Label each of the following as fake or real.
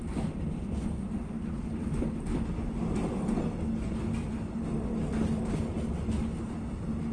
real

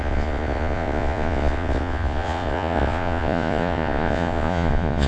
fake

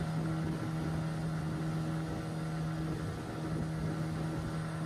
real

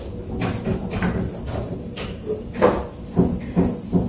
real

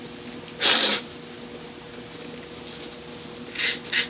real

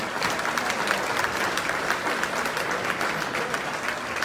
fake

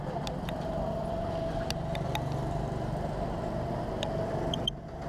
real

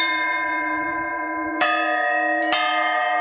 fake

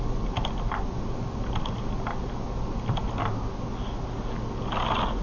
real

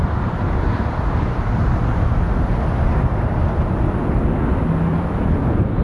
real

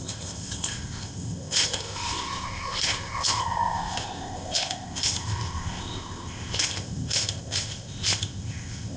fake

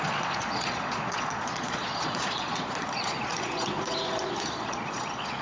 fake